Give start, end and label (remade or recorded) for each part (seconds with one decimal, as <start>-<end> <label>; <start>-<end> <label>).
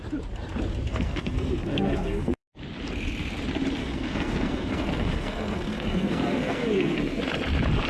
0.0-0.9 recorded; 0.9-2.6 remade; 2.6-3.8 recorded; 3.8-7.2 remade; 7.2-7.9 recorded